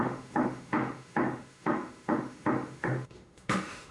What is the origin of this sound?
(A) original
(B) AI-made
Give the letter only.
B